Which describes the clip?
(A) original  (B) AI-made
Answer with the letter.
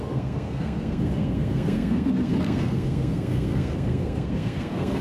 B